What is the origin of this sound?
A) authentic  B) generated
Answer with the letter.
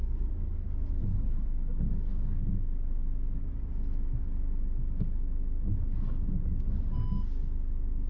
A